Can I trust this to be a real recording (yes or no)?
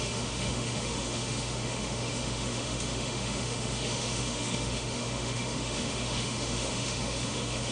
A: no